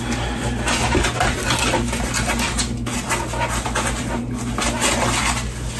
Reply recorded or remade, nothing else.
recorded